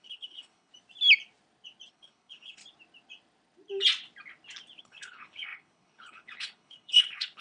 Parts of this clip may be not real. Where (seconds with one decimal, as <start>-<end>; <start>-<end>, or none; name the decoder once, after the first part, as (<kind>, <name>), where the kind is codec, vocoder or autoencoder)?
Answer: 0.0-0.7 (codec, HILCodec); 1.9-2.6; 4.8-7.4